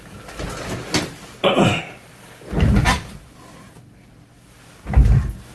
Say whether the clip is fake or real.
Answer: real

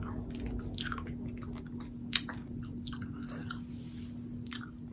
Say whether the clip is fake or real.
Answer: real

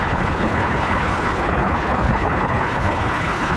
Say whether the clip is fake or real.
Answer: fake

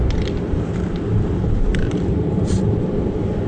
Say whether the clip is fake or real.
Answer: real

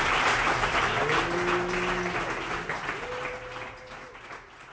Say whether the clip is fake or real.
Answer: real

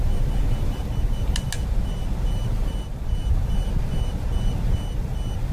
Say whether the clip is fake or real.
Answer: real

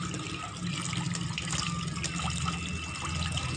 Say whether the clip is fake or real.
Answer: real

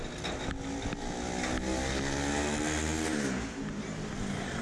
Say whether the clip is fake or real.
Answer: real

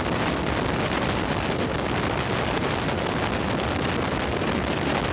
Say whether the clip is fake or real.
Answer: real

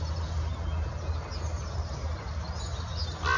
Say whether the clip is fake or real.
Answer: real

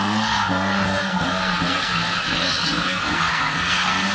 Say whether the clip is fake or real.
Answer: fake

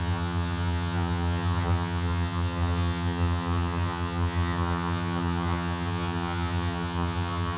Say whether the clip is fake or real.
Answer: fake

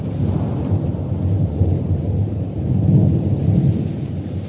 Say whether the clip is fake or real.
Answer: fake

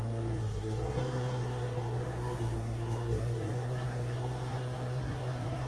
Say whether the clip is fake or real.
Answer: fake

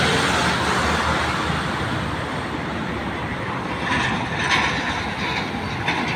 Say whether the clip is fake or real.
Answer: real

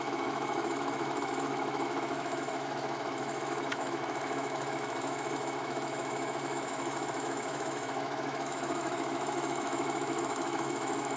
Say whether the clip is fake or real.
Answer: fake